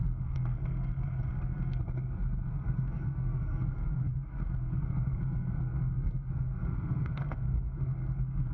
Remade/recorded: remade